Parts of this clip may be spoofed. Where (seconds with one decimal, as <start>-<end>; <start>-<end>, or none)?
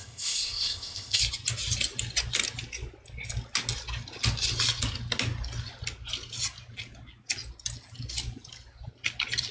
0.0-1.2